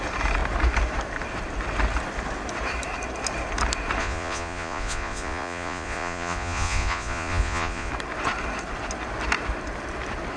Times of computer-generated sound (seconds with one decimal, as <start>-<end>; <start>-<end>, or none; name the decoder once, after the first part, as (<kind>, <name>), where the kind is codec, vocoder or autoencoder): 4.0-7.9 (vocoder, Vocos)